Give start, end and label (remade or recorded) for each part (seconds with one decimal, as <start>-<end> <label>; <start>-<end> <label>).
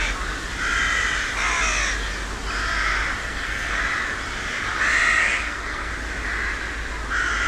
0.0-3.2 recorded; 3.2-3.8 remade; 3.8-5.2 recorded; 5.2-5.9 remade; 5.9-7.5 recorded